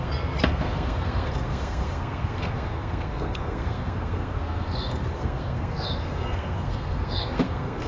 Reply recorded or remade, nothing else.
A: remade